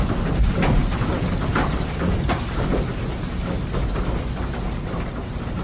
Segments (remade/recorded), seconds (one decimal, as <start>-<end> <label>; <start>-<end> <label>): 0.0-0.8 recorded; 0.8-4.2 remade; 4.2-5.6 recorded